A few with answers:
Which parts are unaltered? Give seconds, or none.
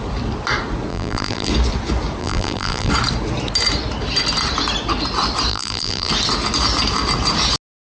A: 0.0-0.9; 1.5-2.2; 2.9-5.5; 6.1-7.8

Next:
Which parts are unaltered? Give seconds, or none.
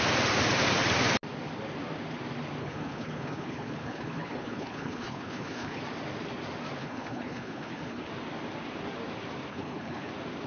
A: 0.0-2.6; 5.8-6.8; 8.1-9.5; 10.1-10.5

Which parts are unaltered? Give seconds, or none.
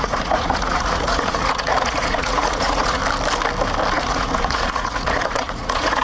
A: 3.0-3.9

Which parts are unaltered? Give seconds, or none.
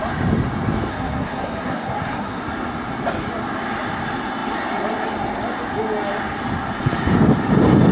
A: 0.0-0.9; 2.4-7.9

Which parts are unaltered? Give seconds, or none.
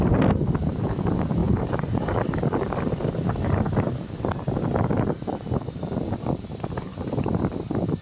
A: 0.0-1.4; 2.3-8.0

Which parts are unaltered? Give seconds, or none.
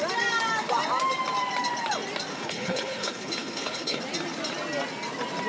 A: 0.0-2.3; 4.0-5.5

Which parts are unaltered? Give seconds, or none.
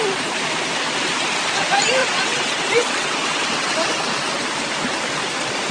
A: 0.0-2.0; 3.7-5.7